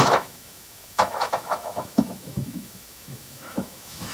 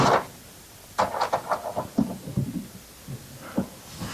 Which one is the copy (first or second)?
first